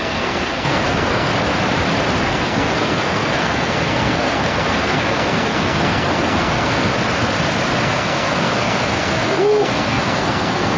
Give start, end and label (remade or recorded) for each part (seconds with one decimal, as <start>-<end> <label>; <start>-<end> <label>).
0.0-1.3 remade; 1.3-2.2 recorded; 2.2-6.9 remade; 6.9-7.8 recorded; 7.8-10.8 remade

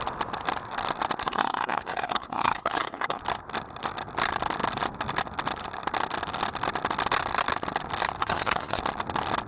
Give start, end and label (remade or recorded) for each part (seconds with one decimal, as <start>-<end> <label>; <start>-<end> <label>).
0.0-1.2 recorded; 1.2-3.2 remade; 3.2-8.2 recorded; 8.2-8.8 remade; 8.8-9.5 recorded

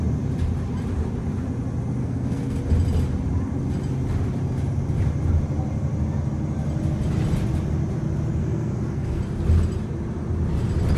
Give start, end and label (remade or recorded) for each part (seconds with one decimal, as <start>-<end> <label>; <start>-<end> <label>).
0.0-2.0 recorded; 2.0-2.6 remade; 2.6-8.4 recorded; 8.4-9.2 remade; 9.2-11.0 recorded